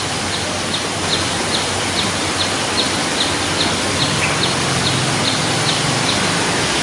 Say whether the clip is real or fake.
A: real